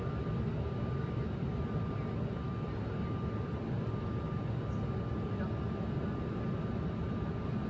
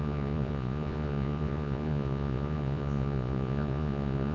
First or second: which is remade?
second